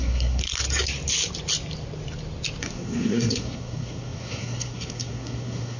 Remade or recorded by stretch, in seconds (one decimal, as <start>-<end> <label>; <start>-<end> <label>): 0.0-0.4 remade; 0.4-2.6 recorded; 2.6-5.8 remade